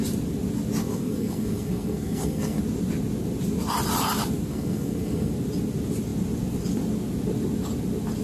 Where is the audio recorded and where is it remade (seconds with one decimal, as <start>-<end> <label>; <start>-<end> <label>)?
0.0-0.8 recorded; 0.8-2.6 remade; 2.6-4.5 recorded; 4.5-5.3 remade; 5.3-8.2 recorded